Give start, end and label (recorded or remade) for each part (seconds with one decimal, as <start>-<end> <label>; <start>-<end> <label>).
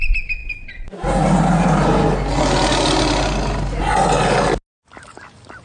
0.0-5.6 recorded